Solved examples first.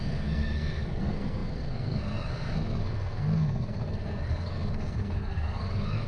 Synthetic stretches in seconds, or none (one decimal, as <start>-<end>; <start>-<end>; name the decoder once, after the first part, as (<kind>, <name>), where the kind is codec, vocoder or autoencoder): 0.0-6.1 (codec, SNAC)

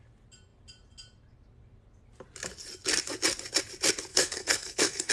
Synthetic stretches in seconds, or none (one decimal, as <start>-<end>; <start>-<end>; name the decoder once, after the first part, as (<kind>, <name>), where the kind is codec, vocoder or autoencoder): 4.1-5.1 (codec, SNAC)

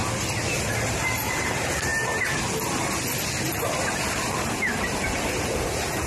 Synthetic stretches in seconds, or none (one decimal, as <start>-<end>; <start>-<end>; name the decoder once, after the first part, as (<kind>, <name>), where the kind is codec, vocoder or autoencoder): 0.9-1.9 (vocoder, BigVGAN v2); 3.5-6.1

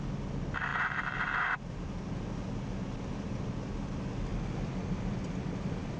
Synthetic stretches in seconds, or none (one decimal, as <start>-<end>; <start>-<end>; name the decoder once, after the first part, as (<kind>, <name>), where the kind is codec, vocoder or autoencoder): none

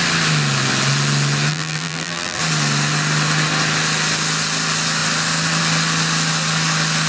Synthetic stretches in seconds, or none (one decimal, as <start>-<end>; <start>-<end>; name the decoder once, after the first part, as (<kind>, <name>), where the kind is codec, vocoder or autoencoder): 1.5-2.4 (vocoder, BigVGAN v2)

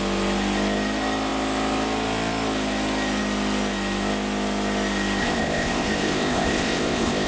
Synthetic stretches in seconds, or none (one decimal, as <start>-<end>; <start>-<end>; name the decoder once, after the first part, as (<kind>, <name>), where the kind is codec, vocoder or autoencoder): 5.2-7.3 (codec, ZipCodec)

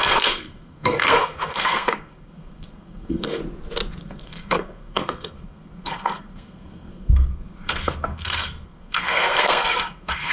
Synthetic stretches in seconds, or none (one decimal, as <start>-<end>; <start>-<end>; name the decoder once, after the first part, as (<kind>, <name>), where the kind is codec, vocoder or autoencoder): 0.0-3.4 (codec, SNAC); 4.0-10.3

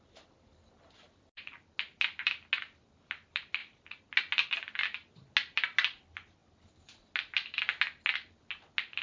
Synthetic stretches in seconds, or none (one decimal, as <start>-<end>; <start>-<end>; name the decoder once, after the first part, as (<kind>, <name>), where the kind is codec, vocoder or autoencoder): none